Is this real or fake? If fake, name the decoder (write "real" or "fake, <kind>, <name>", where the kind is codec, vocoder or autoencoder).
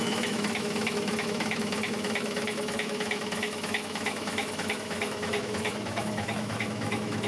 fake, autoencoder, DAC-VAE